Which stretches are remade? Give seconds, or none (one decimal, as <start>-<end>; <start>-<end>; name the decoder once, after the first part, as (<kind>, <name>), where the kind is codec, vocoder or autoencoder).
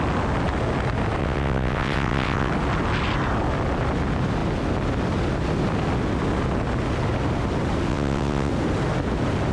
1.2-2.5 (vocoder, WaveNeXt); 7.9-8.5